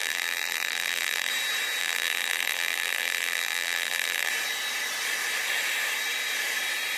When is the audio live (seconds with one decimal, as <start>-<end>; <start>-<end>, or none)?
1.3-1.8; 4.3-7.0